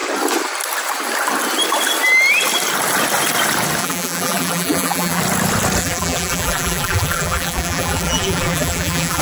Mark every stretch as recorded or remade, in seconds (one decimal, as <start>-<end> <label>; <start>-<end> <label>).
0.0-3.8 recorded; 3.8-5.2 remade; 5.2-5.8 recorded; 5.8-9.2 remade